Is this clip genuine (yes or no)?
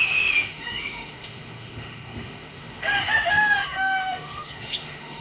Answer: no